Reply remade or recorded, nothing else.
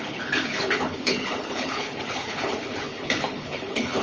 remade